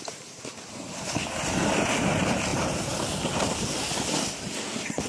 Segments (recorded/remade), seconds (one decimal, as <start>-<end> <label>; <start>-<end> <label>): 0.0-5.1 recorded